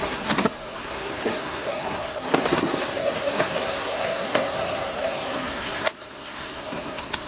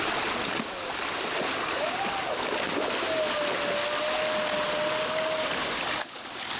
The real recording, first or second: second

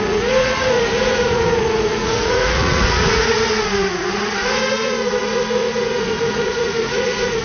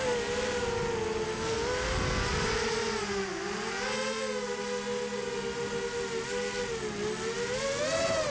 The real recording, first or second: second